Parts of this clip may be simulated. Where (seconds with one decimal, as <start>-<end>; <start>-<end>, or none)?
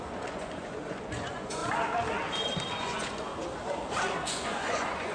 0.0-1.6; 2.8-3.3; 4.3-5.1